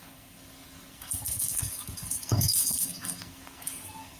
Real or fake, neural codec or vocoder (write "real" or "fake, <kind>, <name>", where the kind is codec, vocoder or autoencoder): fake, codec, SNAC